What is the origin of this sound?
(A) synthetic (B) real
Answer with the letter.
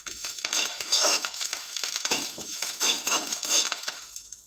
A